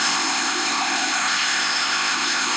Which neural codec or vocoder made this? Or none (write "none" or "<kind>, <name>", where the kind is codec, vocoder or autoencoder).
codec, ZipCodec